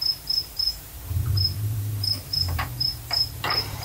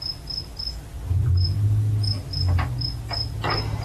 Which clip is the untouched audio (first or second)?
second